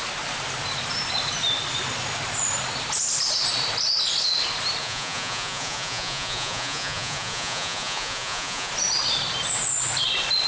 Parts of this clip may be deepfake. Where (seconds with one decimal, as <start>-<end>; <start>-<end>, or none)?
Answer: 4.8-8.7